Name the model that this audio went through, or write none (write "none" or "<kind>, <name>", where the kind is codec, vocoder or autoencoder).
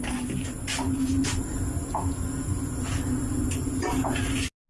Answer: none